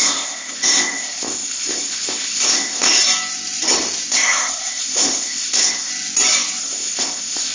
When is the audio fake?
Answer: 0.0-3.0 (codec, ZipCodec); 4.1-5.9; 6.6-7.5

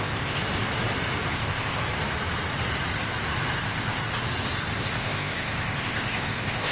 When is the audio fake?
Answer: 0.0-0.4 (codec, ZipCodec); 1.3-1.8; 3.6-4.0; 4.8-6.7

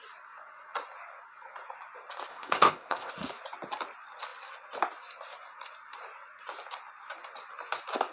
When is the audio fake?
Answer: 2.3-3.1 (codec, ZipCodec)